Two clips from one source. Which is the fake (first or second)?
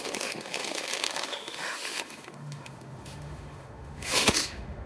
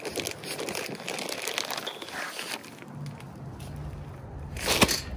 first